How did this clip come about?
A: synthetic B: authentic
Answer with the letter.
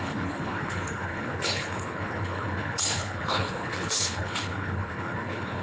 A